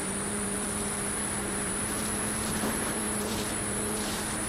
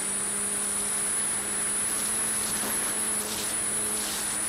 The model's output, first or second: first